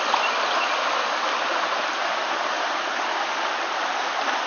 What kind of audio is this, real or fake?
real